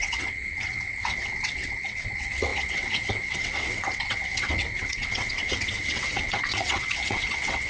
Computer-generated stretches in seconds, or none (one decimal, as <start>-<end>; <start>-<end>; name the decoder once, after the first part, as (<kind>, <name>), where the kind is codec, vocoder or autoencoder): 0.0-7.7 (vocoder, WaveNeXt)